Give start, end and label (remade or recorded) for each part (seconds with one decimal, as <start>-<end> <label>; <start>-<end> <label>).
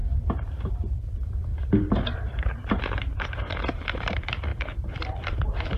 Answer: 0.0-1.5 remade; 1.5-2.3 recorded; 2.3-5.8 remade